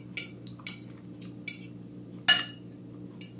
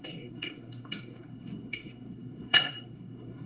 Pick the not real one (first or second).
second